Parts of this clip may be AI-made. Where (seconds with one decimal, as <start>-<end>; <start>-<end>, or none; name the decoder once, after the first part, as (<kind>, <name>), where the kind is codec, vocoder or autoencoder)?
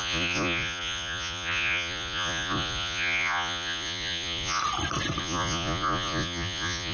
0.0-4.6 (vocoder, Vocos); 5.2-6.9